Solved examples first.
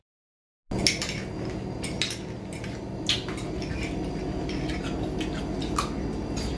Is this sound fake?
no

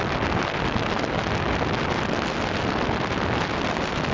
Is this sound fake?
no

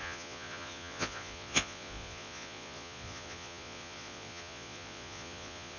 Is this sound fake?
yes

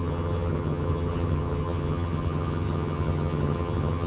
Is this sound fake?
yes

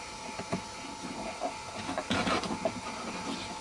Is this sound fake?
no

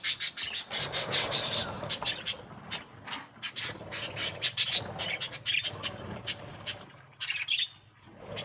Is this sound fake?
yes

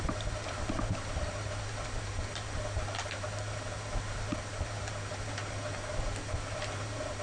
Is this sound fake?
yes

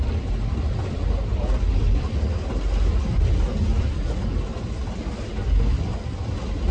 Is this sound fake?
no